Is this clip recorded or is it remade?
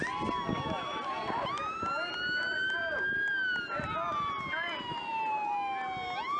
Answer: recorded